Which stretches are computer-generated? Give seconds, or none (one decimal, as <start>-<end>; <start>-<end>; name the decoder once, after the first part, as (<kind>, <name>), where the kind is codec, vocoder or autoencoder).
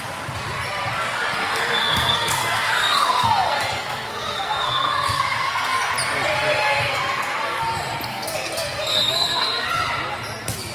1.4-5.9 (codec, SNAC); 6.6-7.6; 8.1-9.7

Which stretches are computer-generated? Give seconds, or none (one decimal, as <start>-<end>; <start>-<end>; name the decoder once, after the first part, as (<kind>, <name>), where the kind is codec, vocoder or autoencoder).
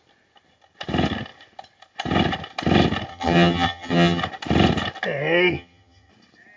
3.1-4.2 (vocoder, HiFi-GAN); 5.5-6.1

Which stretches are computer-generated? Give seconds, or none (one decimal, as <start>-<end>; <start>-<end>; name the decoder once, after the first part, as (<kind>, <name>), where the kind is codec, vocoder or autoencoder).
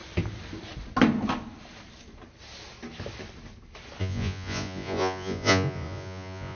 4.0-6.6 (vocoder, Vocos)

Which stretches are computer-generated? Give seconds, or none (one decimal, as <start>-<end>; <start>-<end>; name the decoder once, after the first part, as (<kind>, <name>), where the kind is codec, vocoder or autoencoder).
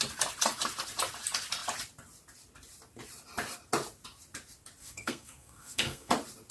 4.8-6.1 (codec, SNAC)